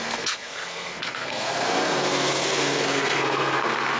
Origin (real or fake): fake